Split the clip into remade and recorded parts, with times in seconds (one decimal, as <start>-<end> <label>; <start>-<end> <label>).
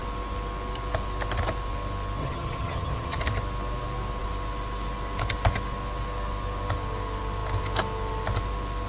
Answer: 0.0-2.2 recorded; 2.2-3.2 remade; 3.2-8.9 recorded